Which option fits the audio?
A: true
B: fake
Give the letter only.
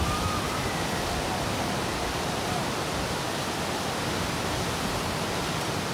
A